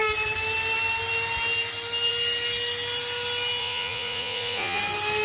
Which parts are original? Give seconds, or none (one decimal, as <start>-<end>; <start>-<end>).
0.0-3.6; 4.8-5.2